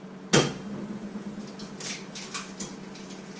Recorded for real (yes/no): yes